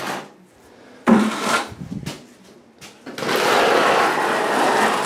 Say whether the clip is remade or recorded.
recorded